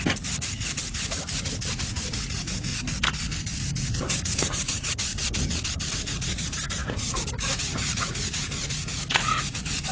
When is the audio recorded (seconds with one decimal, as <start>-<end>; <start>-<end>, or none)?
2.7-3.6; 5.1-5.9